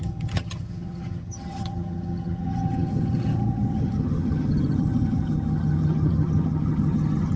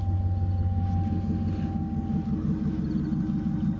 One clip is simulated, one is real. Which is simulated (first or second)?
first